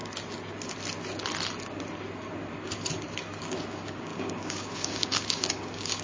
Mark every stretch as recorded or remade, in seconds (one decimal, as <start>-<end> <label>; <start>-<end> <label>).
0.0-3.4 recorded; 3.4-6.0 remade